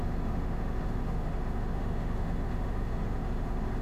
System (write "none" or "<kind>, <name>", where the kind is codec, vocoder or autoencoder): autoencoder, DAC-VAE